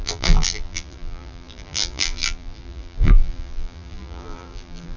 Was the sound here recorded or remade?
remade